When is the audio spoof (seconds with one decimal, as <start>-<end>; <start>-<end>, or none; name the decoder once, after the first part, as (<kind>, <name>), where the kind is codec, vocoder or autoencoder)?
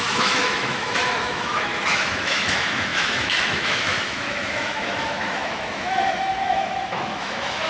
0.0-7.7 (autoencoder, DAC-VAE)